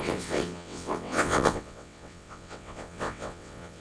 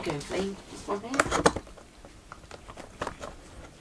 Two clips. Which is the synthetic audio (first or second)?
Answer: first